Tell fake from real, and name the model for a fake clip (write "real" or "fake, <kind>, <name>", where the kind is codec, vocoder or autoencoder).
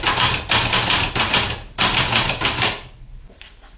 fake, vocoder, BigVGAN v2